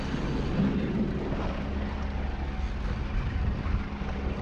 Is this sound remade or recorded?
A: recorded